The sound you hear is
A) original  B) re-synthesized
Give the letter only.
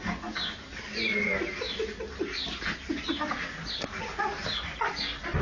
A